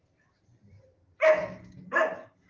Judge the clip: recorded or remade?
recorded